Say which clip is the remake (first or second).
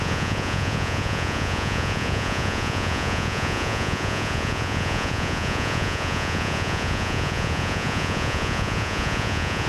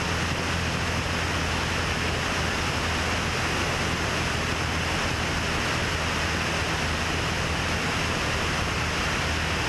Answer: first